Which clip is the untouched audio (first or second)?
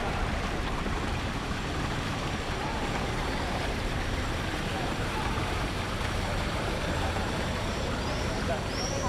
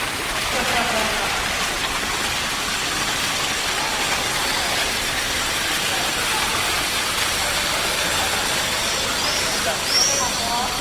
second